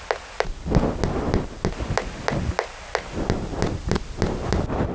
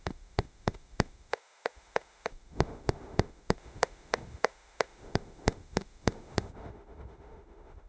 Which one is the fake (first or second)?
second